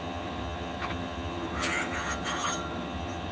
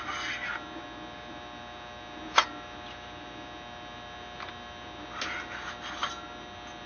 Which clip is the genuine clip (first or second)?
second